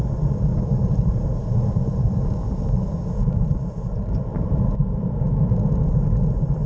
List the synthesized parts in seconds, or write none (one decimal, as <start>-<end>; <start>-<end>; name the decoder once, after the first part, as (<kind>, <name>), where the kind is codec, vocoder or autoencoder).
0.5-1.2 (vocoder, BigVGAN v2); 4.3-5.3